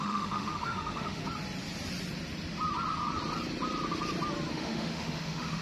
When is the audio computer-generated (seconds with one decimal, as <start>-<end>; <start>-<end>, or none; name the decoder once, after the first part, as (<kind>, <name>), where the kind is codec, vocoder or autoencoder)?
0.0-1.2 (autoencoder, DAC-VAE); 4.5-5.6